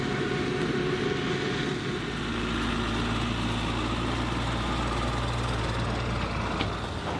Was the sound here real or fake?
real